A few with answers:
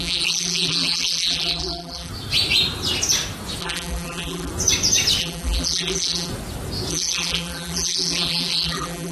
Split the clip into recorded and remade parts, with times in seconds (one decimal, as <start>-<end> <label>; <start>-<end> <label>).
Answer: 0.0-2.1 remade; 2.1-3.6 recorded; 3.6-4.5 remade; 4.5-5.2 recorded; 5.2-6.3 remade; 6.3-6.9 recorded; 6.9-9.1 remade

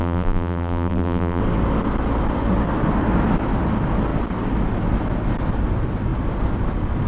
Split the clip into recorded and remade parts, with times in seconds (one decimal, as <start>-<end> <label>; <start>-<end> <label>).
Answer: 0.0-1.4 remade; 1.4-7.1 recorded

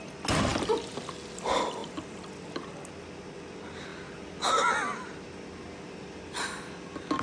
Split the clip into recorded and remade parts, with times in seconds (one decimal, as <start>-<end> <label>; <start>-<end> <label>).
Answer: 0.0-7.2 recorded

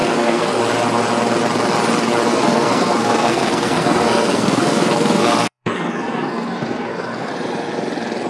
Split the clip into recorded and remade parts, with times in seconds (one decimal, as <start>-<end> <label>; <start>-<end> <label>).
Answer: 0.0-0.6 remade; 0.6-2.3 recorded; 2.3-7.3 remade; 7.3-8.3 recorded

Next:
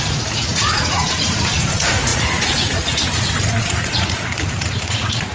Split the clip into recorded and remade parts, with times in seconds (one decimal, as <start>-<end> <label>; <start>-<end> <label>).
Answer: 0.0-5.3 remade